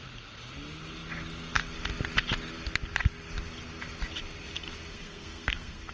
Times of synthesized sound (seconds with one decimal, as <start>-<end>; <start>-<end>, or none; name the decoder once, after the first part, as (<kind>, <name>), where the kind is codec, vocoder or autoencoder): 4.9-5.9 (codec, SNAC)